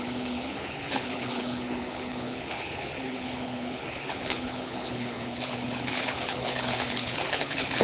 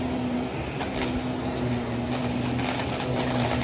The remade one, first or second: first